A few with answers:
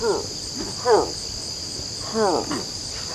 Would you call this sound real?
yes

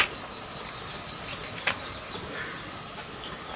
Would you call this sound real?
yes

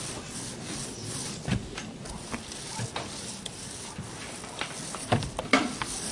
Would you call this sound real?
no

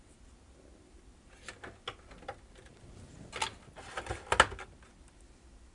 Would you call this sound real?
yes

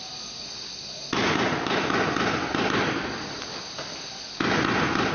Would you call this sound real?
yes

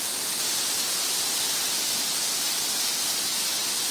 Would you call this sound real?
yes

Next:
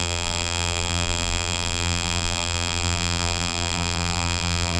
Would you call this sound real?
no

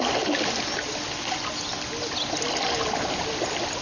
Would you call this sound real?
yes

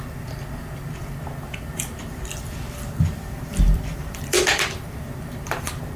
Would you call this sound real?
no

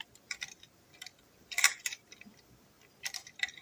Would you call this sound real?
no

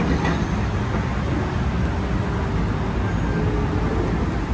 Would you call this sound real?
yes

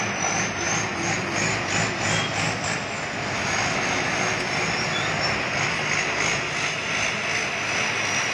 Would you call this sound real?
yes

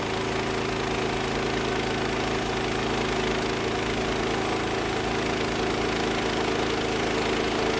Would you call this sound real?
yes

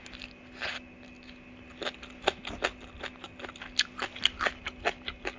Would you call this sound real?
yes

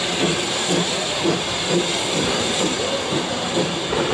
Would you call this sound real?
no